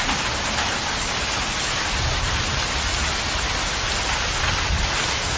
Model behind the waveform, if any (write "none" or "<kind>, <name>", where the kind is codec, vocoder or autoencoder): none